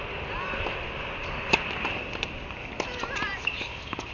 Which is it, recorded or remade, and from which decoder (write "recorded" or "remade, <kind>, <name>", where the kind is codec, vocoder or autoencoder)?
recorded